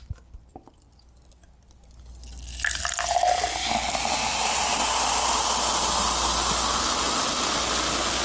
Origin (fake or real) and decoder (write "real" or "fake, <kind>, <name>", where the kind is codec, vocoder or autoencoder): real